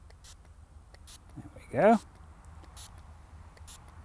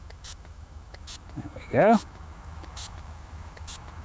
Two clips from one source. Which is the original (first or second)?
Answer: first